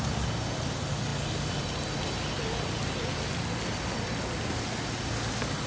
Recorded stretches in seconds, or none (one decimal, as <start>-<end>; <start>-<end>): 0.0-5.7